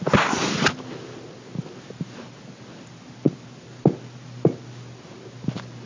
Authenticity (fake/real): real